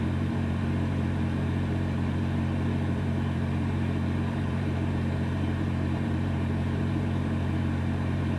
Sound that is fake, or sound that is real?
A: fake